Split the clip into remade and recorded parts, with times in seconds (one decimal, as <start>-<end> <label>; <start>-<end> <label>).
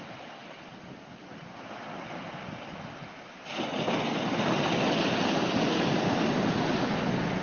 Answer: 0.0-7.4 recorded